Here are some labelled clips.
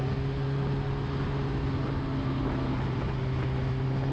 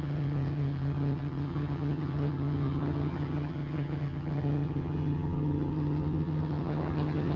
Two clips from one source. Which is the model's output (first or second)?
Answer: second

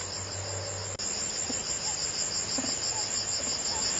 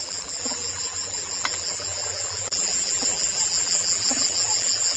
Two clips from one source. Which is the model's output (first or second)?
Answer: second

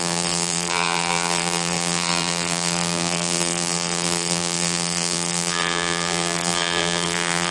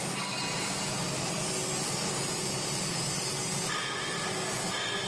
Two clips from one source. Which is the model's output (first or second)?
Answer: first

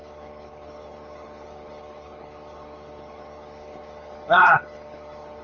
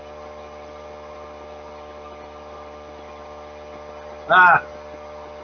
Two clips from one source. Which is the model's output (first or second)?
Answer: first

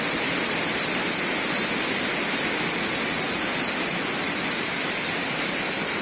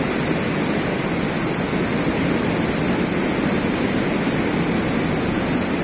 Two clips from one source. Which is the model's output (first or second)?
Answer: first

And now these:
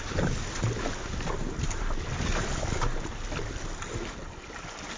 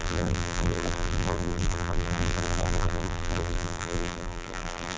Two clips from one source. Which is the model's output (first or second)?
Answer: second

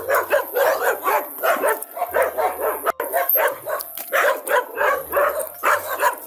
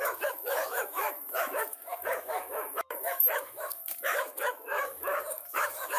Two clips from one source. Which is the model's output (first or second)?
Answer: second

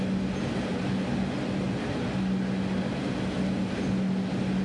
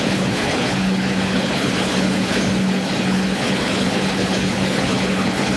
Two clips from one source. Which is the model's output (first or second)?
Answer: second